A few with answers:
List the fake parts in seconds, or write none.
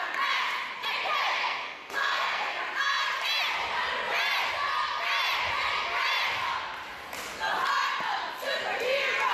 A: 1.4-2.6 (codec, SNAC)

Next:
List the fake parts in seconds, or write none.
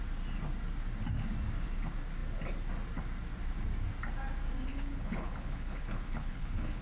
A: 4.7-6.8 (codec, HILCodec)